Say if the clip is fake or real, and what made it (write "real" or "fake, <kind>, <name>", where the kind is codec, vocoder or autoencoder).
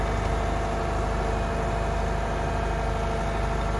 real